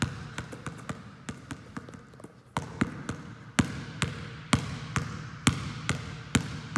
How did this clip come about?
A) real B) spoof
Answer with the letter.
A